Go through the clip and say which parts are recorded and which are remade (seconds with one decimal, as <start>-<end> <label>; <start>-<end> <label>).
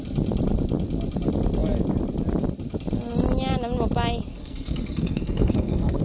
0.0-4.3 recorded; 4.3-6.0 remade